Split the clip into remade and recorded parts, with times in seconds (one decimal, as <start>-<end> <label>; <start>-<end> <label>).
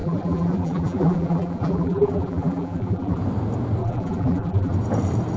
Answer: 0.0-3.2 remade; 3.2-3.8 recorded; 3.8-4.7 remade; 4.7-5.4 recorded